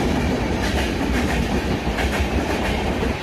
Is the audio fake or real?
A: fake